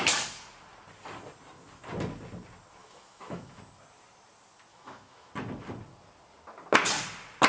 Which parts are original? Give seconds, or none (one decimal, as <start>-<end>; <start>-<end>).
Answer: 0.0-2.8; 3.6-4.7; 5.3-7.5